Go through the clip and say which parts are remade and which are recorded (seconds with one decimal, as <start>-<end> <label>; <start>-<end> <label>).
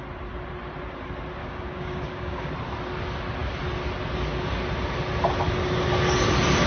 0.0-1.4 recorded; 1.4-2.5 remade; 2.5-6.7 recorded